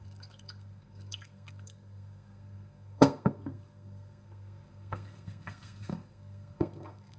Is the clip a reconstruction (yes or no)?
yes